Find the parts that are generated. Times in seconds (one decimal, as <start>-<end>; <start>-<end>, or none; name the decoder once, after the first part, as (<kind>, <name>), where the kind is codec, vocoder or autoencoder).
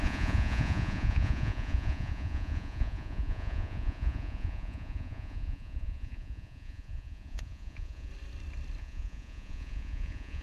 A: 0.0-8.1 (vocoder, Vocos); 8.8-10.4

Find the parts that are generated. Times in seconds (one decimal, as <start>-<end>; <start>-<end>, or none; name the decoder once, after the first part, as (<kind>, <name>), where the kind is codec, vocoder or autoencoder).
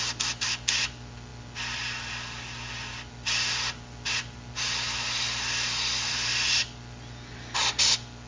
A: none